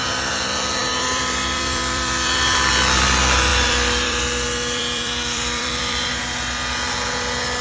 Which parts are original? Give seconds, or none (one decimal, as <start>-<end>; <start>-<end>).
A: 0.0-0.8; 2.7-3.5; 6.2-7.6